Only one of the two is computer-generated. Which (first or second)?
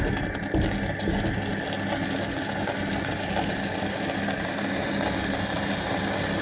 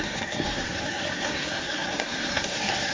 second